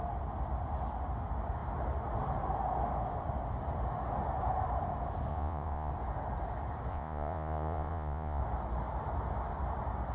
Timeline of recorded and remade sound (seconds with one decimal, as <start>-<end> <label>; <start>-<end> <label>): 0.0-5.3 recorded; 5.3-5.9 remade; 5.9-6.9 recorded; 6.9-8.4 remade; 8.4-10.1 recorded